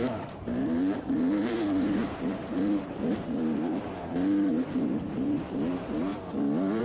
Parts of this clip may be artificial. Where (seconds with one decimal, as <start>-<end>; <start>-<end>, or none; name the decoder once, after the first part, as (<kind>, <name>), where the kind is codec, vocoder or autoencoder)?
0.0-6.1 (vocoder, BigVGAN v2)